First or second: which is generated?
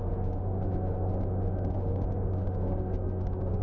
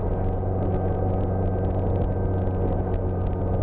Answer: first